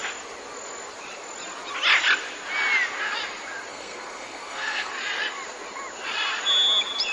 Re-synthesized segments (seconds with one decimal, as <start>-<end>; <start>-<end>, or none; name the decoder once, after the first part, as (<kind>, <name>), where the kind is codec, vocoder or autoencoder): 3.7-4.9 (codec, SNAC)